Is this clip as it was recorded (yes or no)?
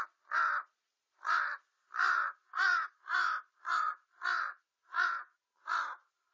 no